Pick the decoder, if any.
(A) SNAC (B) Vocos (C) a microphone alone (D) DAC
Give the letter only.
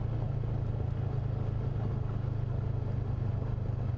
C